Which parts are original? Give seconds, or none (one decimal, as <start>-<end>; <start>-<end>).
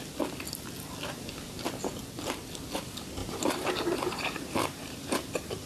0.0-3.2